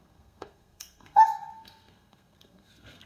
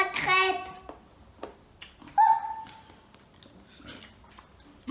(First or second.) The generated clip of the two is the first